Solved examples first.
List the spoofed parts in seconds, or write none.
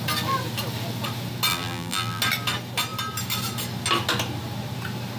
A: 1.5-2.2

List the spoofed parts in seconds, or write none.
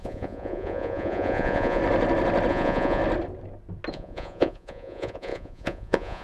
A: 0.0-1.8; 2.5-3.0; 3.9-6.2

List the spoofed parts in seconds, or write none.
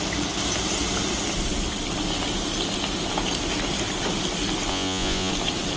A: 4.7-5.3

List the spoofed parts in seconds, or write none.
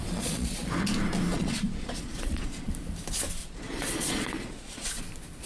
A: 0.0-0.7; 1.3-2.7; 3.4-5.0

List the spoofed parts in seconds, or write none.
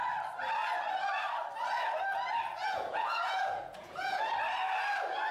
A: 2.5-4.2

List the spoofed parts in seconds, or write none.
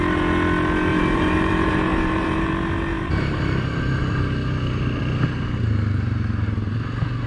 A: 0.9-2.5; 2.9-4.0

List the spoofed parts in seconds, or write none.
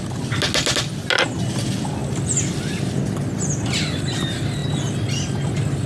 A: none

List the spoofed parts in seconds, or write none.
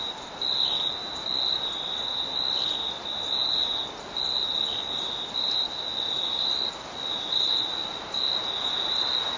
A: none